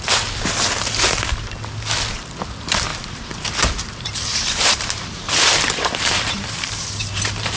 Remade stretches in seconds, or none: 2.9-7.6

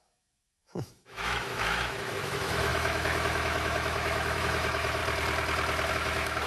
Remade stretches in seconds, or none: 0.0-5.0; 5.9-6.5

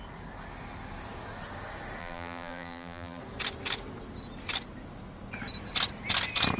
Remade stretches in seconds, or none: 2.0-3.2

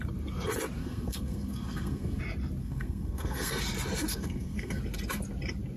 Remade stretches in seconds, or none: 0.8-2.2; 2.6-3.6; 4.1-4.8

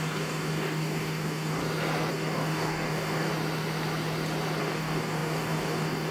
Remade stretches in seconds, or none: 0.0-1.6; 2.1-3.3; 4.6-6.1